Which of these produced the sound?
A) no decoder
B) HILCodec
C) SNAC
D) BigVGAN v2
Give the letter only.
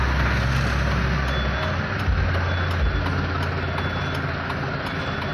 A